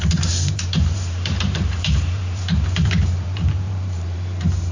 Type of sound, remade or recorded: remade